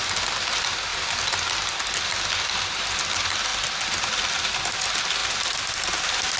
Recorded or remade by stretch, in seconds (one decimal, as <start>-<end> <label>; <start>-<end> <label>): 0.0-5.2 recorded; 5.2-5.9 remade; 5.9-6.4 recorded